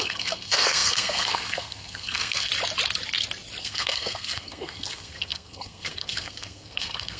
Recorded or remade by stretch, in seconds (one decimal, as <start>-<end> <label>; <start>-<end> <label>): 0.0-2.5 remade; 2.5-3.6 recorded; 3.6-7.2 remade